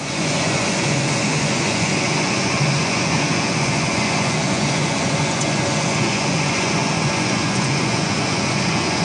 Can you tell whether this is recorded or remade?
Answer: remade